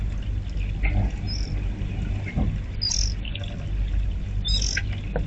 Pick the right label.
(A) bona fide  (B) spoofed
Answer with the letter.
A